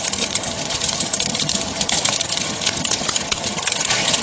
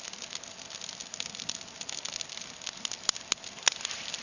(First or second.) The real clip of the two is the second